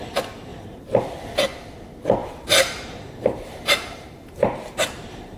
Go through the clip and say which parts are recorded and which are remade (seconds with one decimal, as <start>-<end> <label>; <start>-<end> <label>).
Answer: 0.0-0.5 recorded; 0.5-1.0 remade; 1.0-2.2 recorded; 2.2-5.4 remade